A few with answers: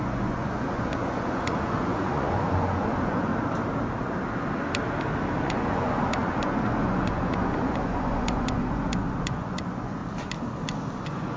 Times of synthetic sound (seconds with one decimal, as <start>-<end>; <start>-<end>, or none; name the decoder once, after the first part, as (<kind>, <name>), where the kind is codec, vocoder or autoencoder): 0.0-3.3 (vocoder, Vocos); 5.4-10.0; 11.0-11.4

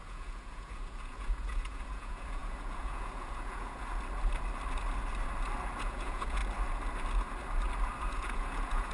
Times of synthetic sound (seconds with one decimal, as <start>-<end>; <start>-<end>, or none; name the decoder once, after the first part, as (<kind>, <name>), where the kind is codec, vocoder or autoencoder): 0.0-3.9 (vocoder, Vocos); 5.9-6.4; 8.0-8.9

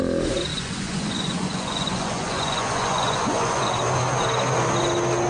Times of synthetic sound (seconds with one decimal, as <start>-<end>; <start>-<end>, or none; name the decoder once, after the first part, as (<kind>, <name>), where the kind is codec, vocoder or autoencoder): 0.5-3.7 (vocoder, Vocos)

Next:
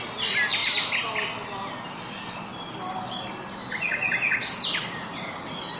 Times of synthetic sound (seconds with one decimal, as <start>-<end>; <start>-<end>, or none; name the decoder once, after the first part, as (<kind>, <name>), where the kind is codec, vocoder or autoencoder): none